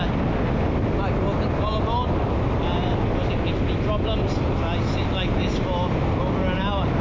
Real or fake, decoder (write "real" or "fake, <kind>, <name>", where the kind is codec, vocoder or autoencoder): real